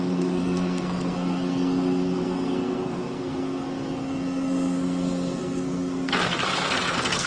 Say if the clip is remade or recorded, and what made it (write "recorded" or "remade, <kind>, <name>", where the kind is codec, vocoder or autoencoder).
remade, codec, SNAC